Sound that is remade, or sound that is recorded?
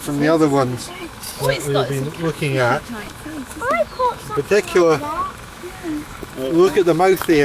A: remade